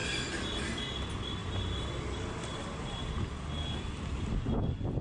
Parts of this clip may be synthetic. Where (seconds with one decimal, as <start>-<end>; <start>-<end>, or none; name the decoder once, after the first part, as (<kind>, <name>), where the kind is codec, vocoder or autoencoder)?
none